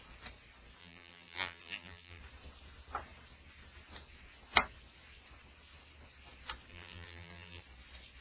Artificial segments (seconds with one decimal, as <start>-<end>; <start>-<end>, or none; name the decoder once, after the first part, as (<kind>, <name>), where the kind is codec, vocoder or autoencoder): 0.8-2.2 (vocoder, BigVGAN v2); 6.7-7.6